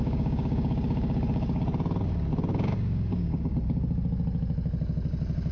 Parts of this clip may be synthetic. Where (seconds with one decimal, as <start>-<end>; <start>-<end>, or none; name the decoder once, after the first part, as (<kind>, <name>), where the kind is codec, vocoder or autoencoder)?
0.0-1.6 (codec, DAC); 2.5-3.5